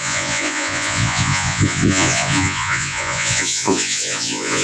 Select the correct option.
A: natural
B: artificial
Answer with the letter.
B